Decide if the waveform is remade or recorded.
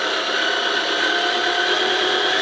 recorded